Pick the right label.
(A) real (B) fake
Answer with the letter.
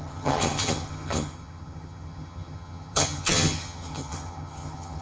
B